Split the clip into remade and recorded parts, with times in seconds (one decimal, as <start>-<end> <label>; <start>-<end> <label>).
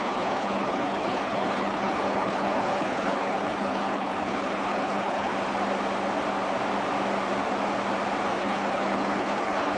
0.0-5.3 remade; 5.3-8.4 recorded; 8.4-9.8 remade